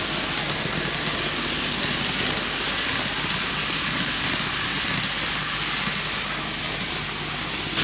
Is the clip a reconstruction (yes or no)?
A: no